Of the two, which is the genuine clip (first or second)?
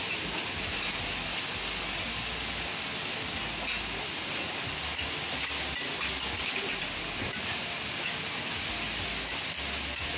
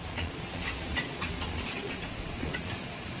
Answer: first